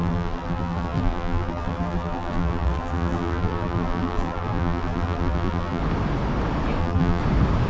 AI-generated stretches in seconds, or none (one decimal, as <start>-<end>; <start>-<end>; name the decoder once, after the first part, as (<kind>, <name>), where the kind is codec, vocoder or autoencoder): 0.0-5.8 (vocoder, BigVGAN v2); 6.8-7.2

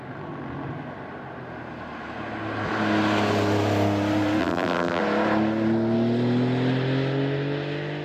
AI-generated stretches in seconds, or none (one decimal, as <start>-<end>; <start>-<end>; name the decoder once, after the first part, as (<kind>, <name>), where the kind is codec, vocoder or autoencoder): 4.4-5.0 (vocoder, BigVGAN v2)

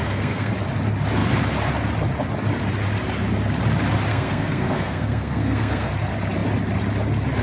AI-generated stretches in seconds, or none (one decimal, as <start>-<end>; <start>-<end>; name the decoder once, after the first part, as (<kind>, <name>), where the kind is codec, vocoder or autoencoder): 0.0-0.5 (codec, SNAC); 4.1-5.9

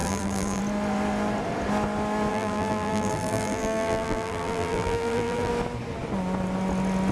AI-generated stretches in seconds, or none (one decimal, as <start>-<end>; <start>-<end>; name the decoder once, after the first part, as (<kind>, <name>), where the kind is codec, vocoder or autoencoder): 0.0-0.6 (vocoder, BigVGAN v2); 2.3-5.5

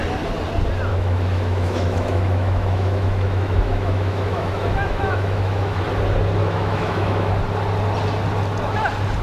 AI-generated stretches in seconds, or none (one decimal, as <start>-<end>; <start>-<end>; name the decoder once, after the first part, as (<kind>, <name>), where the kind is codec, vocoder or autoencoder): 0.9-5.8 (autoencoder, DAC-VAE); 6.4-7.3

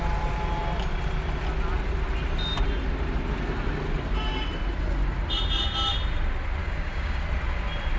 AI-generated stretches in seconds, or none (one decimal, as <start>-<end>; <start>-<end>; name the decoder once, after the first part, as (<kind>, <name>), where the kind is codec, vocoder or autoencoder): 6.6-7.2 (codec, DAC)

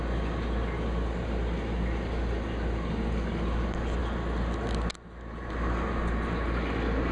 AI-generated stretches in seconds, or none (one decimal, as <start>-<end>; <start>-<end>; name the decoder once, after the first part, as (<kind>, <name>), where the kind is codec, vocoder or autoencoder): none